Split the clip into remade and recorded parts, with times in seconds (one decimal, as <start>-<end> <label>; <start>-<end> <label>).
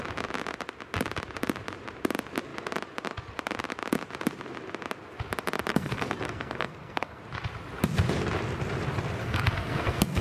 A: 0.0-5.7 recorded; 5.7-7.2 remade; 7.2-9.2 recorded; 9.2-10.2 remade